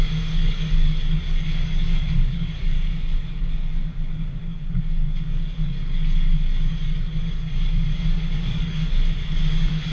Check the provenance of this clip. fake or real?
fake